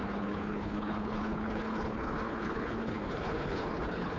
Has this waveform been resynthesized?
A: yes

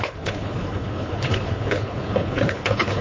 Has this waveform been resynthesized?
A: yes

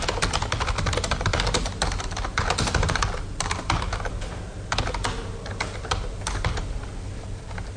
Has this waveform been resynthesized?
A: no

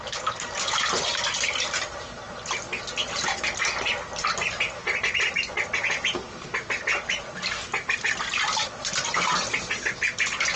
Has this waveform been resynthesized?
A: no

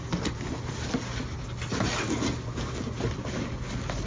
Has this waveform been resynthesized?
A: no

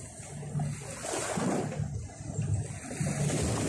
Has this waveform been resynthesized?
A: no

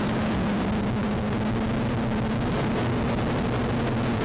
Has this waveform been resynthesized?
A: no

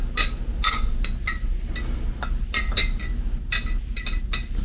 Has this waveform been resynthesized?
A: no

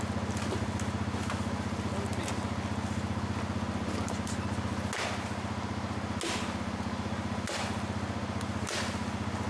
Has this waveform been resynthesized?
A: no